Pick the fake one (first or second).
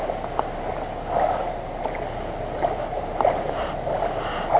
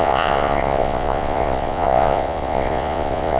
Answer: second